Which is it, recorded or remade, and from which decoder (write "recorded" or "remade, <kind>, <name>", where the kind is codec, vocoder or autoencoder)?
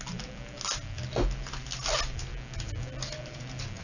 recorded